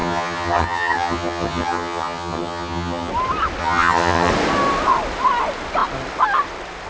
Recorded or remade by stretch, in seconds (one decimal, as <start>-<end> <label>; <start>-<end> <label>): 0.0-3.1 remade; 3.1-3.6 recorded; 3.6-4.3 remade; 4.3-6.9 recorded